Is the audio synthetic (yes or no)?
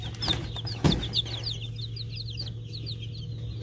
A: no